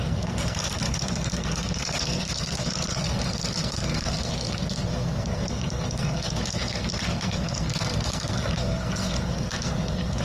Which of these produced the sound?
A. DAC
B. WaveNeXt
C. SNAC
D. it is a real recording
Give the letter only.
C